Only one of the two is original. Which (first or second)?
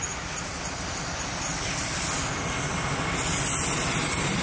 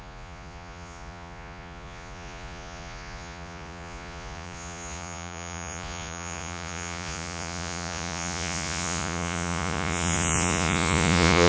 first